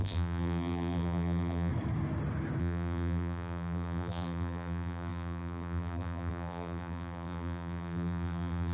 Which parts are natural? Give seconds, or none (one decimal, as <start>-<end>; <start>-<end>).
1.7-2.6